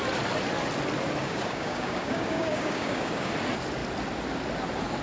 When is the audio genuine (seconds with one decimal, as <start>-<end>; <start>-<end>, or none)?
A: 0.0-1.2; 3.3-5.0